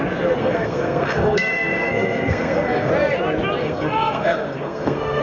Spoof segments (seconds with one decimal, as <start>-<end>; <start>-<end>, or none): 0.4-2.9; 3.6-5.2

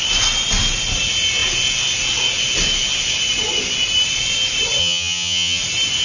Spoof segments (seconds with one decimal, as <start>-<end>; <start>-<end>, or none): 4.8-5.6